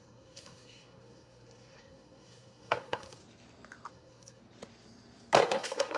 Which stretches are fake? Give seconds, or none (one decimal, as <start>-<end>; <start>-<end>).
0.0-3.2; 3.9-4.4; 5.4-6.0